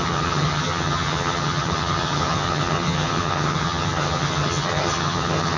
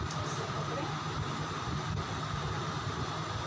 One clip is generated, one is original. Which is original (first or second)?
second